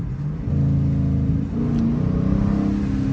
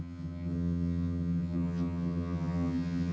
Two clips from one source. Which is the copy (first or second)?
second